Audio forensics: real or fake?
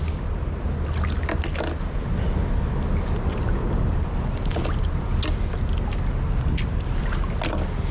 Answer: real